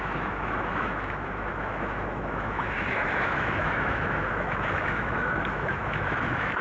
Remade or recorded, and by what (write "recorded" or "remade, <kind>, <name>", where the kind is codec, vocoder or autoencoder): remade, autoencoder, DAC-VAE